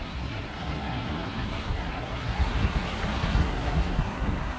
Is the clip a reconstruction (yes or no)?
yes